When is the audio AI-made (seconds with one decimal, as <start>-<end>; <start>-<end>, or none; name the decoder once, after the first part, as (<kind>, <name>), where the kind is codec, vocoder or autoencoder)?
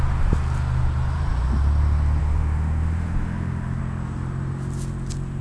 2.2-3.8 (autoencoder, DAC-VAE)